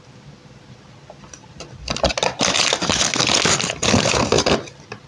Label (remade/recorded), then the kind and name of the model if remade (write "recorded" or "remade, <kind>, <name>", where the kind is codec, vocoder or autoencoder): recorded